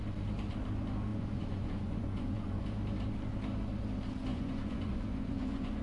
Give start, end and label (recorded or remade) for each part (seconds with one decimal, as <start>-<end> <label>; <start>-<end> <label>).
0.0-1.1 recorded; 1.1-2.6 remade; 2.6-4.3 recorded; 4.3-5.8 remade